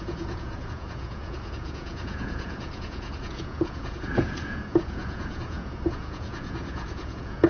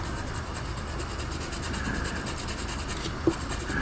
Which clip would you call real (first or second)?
second